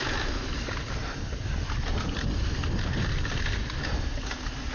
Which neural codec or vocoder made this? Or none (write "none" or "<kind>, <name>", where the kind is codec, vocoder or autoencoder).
none